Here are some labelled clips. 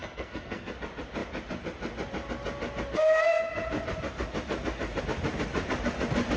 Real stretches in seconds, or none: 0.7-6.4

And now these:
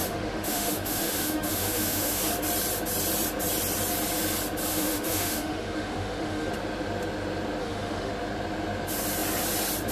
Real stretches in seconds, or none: 2.2-4.7; 6.5-7.6; 8.1-9.9

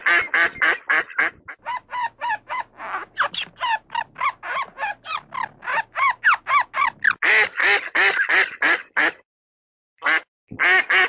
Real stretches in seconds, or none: 0.0-11.1

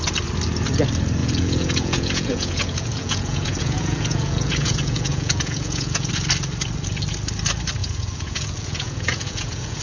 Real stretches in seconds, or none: 0.0-1.2; 6.1-7.8

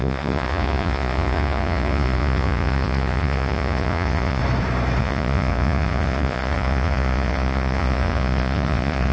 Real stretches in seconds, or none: 4.4-5.0